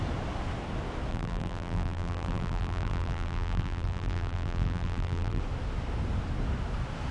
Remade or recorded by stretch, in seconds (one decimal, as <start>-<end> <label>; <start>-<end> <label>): 0.0-1.1 recorded; 1.1-5.4 remade; 5.4-7.1 recorded

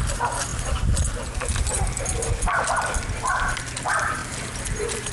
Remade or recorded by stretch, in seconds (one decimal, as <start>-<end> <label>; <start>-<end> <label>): 0.0-5.1 recorded

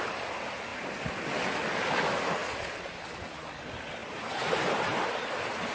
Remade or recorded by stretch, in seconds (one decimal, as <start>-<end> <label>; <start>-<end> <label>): 0.0-4.0 recorded; 4.0-5.3 remade; 5.3-5.7 recorded

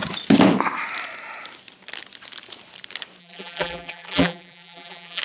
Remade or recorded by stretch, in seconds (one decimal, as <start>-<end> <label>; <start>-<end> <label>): 0.0-3.2 recorded; 3.2-5.2 remade